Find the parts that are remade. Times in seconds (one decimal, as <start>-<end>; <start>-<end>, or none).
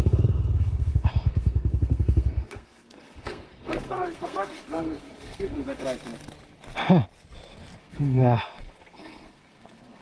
0.0-5.8; 7.8-10.0